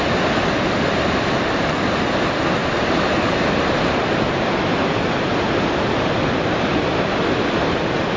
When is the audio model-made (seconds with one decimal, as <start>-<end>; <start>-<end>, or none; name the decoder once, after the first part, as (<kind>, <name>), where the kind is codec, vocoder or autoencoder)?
2.6-3.5 (vocoder, BigVGAN v2)